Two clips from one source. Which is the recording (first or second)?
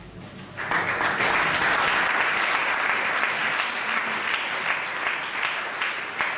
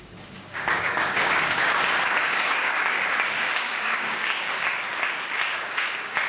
first